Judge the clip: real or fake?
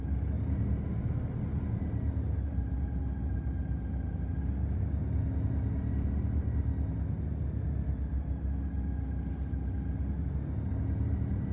real